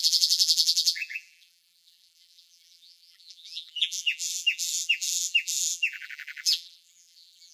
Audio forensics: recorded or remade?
remade